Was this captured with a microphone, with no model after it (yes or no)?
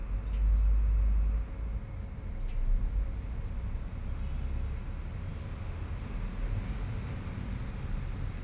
yes